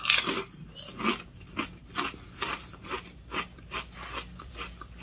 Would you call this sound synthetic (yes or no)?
yes